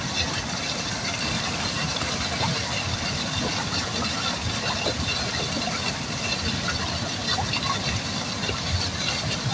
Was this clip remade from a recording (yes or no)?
no